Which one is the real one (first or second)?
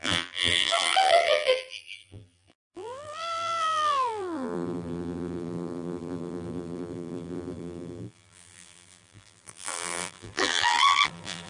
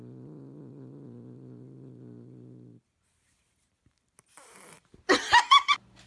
second